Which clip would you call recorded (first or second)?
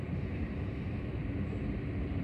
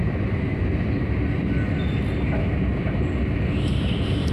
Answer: second